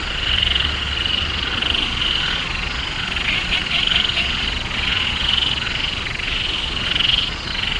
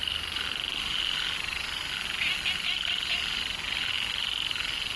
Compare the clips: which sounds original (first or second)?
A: second